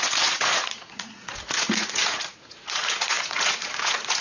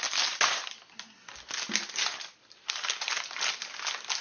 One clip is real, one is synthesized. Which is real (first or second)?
second